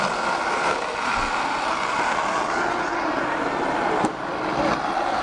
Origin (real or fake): real